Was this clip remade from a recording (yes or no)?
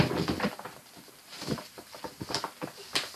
no